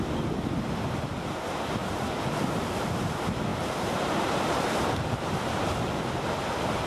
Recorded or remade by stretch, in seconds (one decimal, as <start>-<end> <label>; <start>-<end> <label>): 0.0-1.8 recorded; 1.8-2.9 remade; 2.9-3.5 recorded; 3.5-6.1 remade; 6.1-6.9 recorded